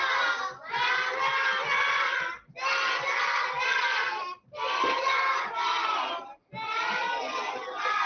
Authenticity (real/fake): real